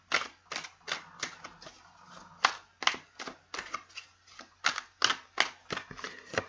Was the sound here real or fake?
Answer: real